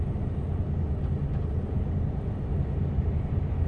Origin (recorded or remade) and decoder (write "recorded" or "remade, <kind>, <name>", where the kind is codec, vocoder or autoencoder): recorded